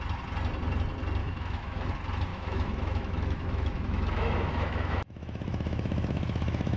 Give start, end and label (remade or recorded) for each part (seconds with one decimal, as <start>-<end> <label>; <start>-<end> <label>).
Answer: 0.0-1.2 recorded; 1.2-1.9 remade; 1.9-2.3 recorded; 2.3-6.8 remade